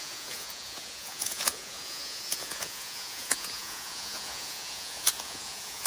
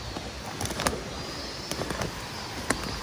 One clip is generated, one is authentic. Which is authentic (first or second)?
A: second